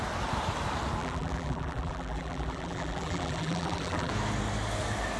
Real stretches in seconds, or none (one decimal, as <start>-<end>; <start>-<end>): 0.0-1.0; 4.1-5.2